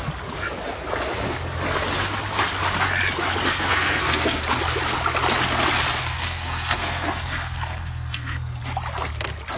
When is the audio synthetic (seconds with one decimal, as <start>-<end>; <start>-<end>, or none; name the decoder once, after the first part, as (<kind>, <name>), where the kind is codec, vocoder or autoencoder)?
3.4-4.4 (codec, SNAC); 6.0-8.6

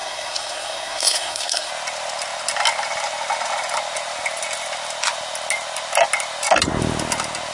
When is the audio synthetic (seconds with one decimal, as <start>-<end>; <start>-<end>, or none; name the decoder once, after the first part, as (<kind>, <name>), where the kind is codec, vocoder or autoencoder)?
0.0-1.7 (codec, SNAC)

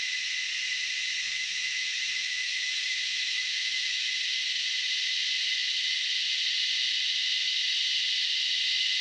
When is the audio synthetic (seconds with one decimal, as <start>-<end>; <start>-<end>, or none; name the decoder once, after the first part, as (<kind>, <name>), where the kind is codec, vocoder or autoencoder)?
1.2-4.1 (autoencoder, DAC-VAE)

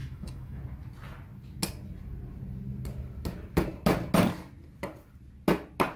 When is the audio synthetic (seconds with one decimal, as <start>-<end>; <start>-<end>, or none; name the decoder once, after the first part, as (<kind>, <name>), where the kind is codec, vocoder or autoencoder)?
0.0-0.6 (autoencoder, DAC-VAE)

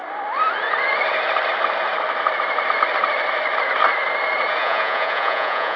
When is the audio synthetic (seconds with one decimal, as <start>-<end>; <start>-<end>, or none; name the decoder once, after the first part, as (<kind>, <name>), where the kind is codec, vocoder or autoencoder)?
4.6-5.8 (vocoder, Vocos)